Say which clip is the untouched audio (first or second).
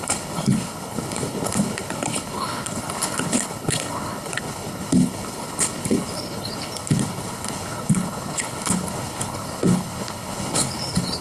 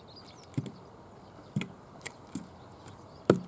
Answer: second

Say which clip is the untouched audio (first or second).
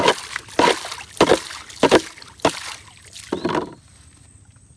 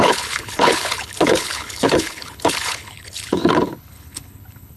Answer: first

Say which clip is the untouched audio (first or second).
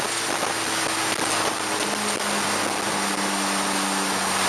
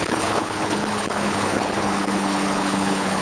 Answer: first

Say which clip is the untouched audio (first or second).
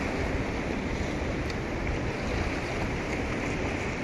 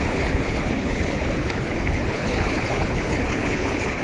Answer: first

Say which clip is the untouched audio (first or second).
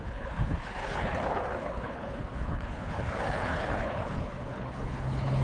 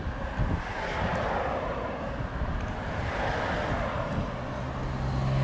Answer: second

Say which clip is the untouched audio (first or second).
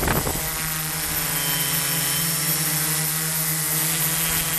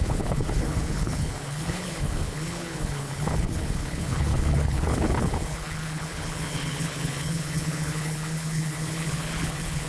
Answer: first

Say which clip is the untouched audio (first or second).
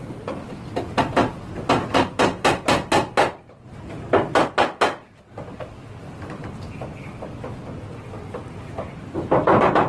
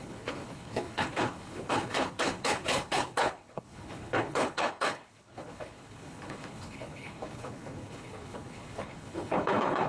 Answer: first